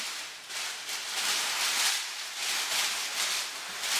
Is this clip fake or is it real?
real